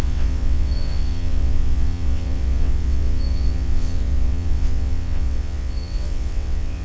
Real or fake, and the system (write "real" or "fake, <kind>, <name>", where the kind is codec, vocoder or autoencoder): fake, vocoder, WaveNeXt